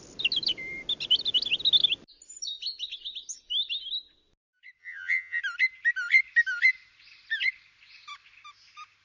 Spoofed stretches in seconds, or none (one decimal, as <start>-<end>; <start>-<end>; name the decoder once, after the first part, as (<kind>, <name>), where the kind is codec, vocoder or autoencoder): 4.8-5.4 (vocoder, HiFi-GAN)